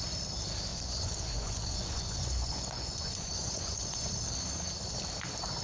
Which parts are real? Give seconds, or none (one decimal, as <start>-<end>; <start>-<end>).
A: 0.0-0.7; 4.1-5.6